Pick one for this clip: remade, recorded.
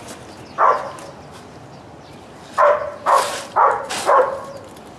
recorded